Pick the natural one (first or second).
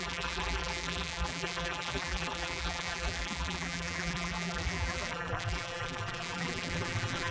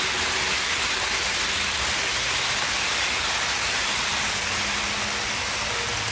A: second